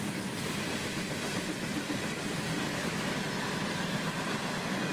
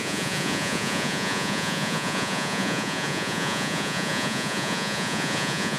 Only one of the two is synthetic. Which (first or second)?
second